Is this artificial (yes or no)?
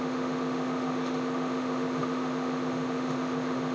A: yes